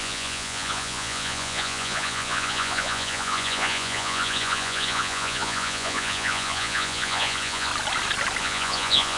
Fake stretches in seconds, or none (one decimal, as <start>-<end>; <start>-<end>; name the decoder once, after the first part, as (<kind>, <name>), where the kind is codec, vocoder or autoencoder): 0.0-7.7 (vocoder, Vocos); 8.4-9.2